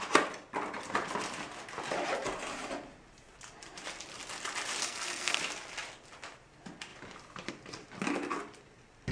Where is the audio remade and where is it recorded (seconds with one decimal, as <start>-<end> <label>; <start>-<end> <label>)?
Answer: 0.0-4.8 recorded; 4.8-5.4 remade; 5.4-9.1 recorded